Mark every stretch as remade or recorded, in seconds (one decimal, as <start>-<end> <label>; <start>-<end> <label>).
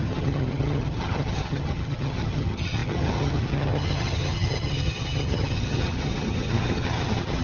0.0-7.4 remade